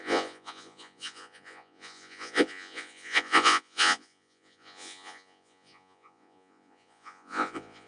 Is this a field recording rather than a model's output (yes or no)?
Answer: no